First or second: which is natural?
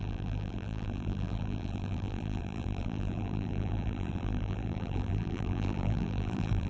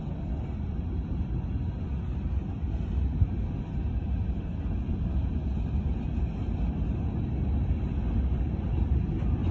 second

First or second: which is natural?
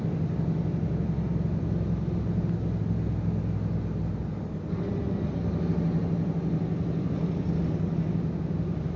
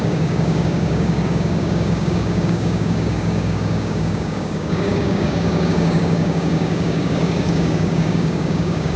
first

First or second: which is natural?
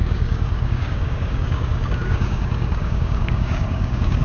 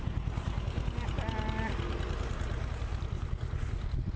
second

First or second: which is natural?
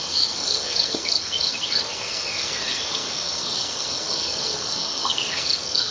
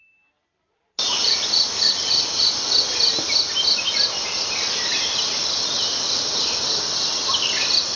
second